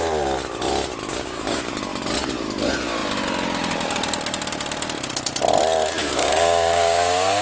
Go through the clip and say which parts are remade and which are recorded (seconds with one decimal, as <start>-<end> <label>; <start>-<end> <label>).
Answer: 0.0-1.1 recorded; 1.1-1.7 remade; 1.7-6.0 recorded; 6.0-7.4 remade